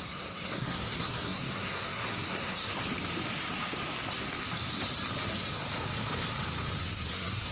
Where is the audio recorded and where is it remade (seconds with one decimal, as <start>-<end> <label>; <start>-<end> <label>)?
0.0-2.6 remade; 2.6-6.8 recorded; 6.8-7.5 remade